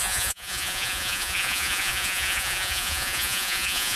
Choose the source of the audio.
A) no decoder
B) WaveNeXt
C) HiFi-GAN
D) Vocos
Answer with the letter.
D